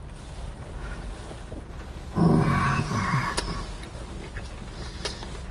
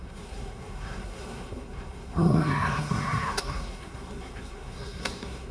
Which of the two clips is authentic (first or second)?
first